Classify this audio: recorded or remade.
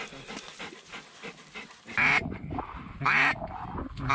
recorded